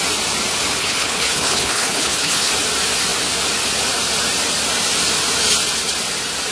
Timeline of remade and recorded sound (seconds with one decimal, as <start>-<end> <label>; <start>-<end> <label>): 0.0-0.8 recorded; 0.8-2.5 remade; 2.5-6.5 recorded